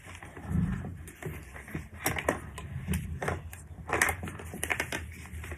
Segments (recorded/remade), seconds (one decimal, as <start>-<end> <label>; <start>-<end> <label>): 0.0-5.6 recorded